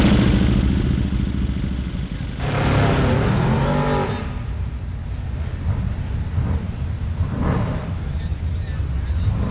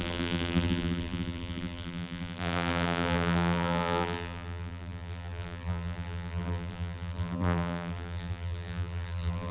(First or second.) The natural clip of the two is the first